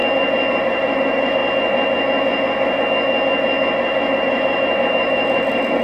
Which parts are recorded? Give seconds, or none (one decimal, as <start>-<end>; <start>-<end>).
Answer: 0.0-0.5; 1.4-4.2